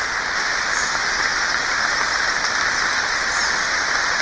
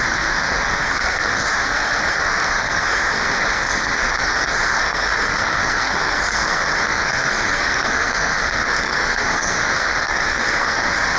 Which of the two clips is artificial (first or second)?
second